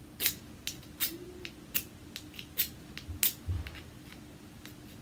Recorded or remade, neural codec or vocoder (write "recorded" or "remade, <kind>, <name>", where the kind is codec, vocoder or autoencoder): recorded